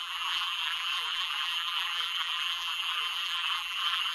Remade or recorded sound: remade